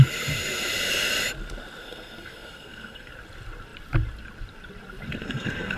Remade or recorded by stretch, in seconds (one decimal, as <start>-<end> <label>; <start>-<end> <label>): 0.0-1.8 recorded; 1.8-3.1 remade; 3.1-5.2 recorded; 5.2-5.8 remade